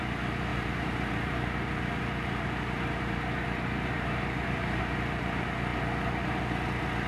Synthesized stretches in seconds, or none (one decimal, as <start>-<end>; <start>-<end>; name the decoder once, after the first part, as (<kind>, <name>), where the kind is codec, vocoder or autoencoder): 0.5-4.8 (vocoder, BigVGAN v2)